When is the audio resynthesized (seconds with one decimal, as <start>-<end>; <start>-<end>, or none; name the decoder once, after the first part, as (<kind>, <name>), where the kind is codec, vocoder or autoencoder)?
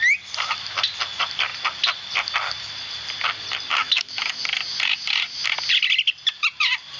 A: 3.8-4.4 (autoencoder, DAC-VAE)